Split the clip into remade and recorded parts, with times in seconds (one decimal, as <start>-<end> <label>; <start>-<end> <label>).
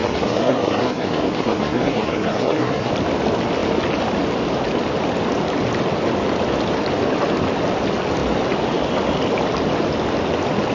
0.0-2.9 remade; 2.9-10.7 recorded